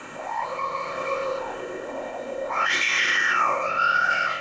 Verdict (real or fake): fake